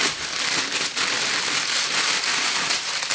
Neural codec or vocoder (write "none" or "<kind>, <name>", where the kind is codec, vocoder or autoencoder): vocoder, BigVGAN v2